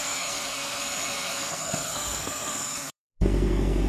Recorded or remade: remade